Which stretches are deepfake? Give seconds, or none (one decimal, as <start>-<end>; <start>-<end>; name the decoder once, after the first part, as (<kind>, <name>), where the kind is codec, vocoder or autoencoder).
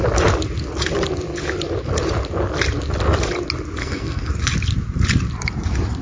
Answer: 3.8-4.3 (codec, SNAC)